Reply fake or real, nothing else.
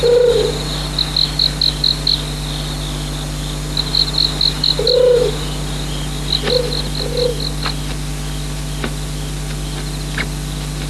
real